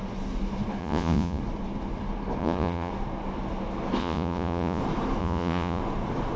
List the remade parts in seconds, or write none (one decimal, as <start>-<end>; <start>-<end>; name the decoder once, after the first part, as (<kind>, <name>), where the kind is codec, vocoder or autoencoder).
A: 0.8-1.4 (vocoder, Vocos); 2.4-2.9; 4.0-4.8; 5.2-5.8